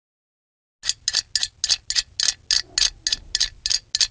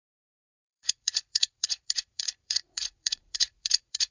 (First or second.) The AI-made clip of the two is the second